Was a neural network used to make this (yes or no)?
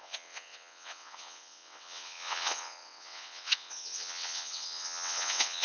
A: yes